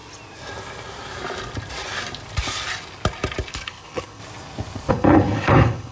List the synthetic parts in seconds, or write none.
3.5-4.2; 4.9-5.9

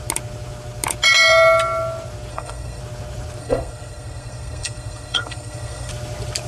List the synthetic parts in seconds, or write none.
2.3-2.8; 3.4-5.9

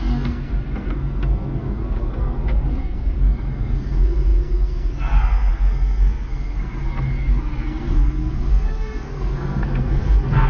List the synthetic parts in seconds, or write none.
0.0-10.5

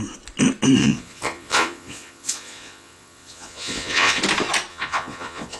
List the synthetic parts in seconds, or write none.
0.8-4.2; 4.7-5.6

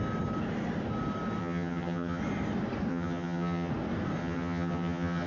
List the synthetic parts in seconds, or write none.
1.4-2.2; 2.9-3.7; 4.2-5.3

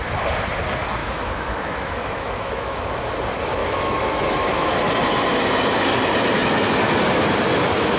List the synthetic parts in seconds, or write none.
1.0-2.8; 3.6-4.7

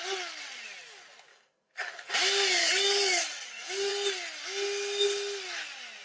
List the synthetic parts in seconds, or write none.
1.3-1.9; 2.6-3.9

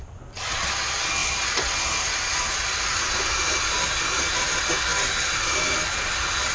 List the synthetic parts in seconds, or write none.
none